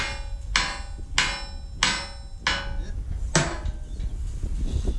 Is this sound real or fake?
real